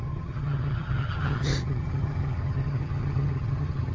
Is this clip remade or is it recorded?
remade